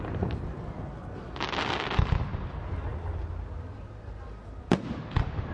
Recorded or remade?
recorded